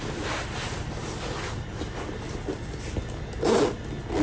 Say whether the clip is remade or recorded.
recorded